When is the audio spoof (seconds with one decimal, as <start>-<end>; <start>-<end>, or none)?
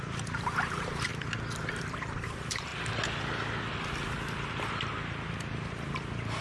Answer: 0.0-1.1; 1.7-2.7; 5.5-6.4